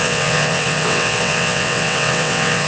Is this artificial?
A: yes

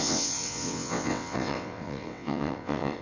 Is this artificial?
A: yes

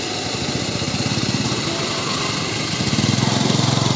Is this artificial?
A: no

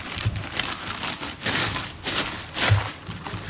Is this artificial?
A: no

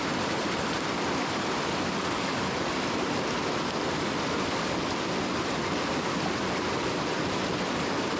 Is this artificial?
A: no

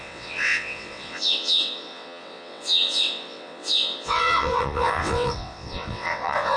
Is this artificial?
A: yes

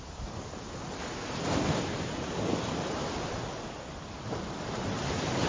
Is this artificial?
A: no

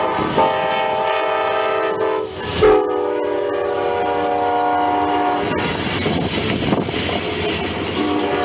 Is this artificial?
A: no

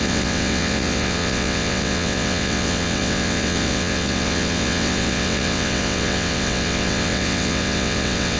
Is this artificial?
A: yes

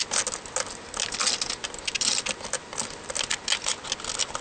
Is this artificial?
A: no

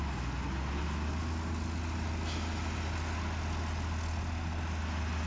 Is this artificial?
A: no